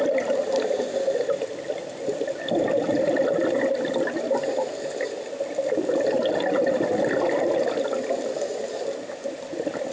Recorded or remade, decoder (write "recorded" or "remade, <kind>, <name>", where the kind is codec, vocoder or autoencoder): recorded